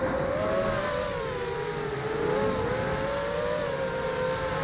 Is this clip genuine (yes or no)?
yes